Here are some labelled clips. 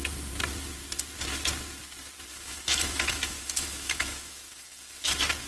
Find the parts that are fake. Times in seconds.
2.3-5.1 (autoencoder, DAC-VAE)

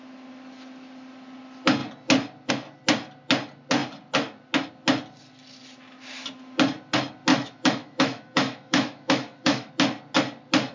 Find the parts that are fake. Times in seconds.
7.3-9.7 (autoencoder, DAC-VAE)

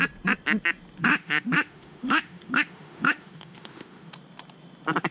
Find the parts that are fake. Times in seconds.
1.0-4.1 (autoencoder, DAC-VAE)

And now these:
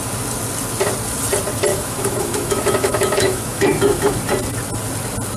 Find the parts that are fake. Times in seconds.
1.7-4.2 (autoencoder, DAC-VAE)